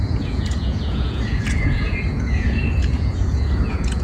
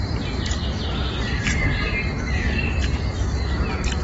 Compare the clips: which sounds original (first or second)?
second